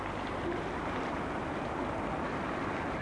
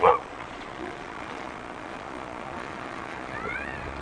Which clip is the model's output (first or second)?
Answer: second